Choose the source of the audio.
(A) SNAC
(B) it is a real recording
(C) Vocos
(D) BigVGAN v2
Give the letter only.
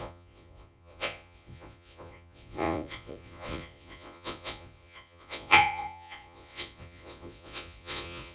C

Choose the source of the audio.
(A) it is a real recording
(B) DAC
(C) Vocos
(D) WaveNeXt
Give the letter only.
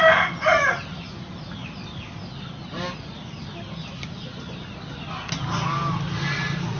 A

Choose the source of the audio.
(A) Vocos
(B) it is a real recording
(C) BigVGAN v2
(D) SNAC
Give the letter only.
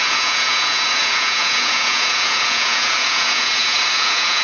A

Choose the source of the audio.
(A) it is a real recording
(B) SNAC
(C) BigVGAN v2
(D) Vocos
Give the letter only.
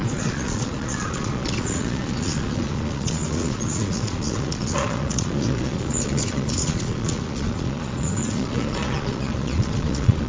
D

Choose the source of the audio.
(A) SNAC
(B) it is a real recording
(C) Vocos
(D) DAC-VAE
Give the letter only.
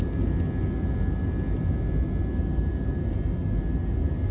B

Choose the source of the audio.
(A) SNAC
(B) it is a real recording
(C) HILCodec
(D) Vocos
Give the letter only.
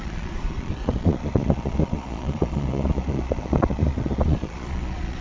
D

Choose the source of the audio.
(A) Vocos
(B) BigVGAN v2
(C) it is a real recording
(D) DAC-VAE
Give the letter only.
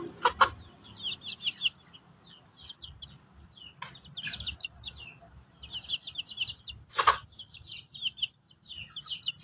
C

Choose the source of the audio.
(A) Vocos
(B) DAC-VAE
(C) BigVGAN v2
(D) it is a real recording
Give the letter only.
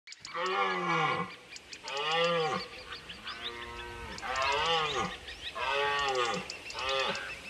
D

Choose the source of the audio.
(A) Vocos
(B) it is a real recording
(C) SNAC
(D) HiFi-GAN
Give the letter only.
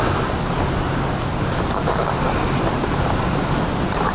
B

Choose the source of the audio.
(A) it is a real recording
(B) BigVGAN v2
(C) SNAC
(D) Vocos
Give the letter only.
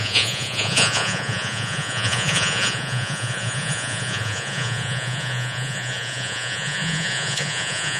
D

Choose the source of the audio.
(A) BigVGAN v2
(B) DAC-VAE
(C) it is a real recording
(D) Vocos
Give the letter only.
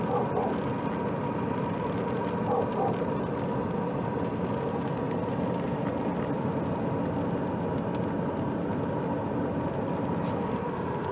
C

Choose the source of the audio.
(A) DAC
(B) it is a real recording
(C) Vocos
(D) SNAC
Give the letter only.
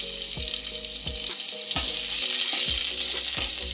B